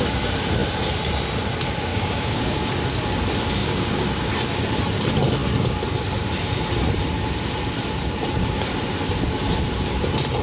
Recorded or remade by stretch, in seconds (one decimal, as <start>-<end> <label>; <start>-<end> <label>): 0.0-1.9 recorded; 1.9-2.6 remade; 2.6-3.6 recorded; 3.6-4.4 remade; 4.4-10.4 recorded